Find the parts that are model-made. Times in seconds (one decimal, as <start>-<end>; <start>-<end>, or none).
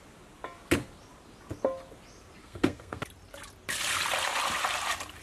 2.4-3.0